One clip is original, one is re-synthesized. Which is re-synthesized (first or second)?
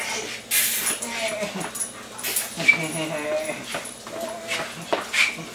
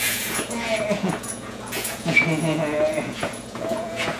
second